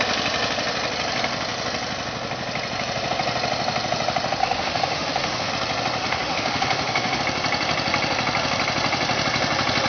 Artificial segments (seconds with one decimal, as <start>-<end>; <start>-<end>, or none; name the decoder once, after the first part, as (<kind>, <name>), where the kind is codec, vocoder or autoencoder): 4.4-5.5 (autoencoder, DAC-VAE); 6.0-7.2